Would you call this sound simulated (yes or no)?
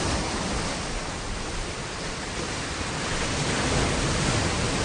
no